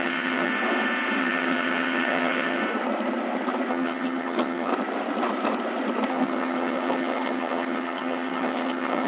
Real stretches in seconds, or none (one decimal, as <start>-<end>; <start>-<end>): 0.5-1.2; 2.6-3.7; 4.7-6.1